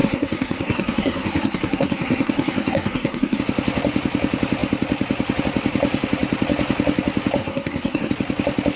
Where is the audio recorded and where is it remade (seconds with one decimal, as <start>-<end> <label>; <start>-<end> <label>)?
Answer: 0.0-3.4 remade; 3.4-7.4 recorded; 7.4-8.1 remade; 8.1-8.8 recorded